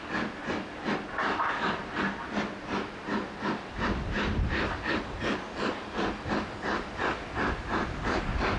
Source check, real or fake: real